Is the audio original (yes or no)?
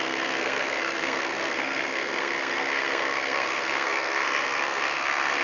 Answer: no